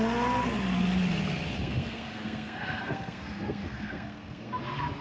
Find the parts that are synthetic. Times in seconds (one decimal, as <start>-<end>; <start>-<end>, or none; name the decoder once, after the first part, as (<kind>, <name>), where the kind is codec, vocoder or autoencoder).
1.6-4.6 (codec, SNAC)